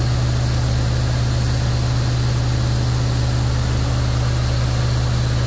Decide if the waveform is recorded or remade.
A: recorded